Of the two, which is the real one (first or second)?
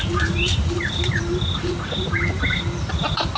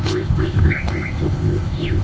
first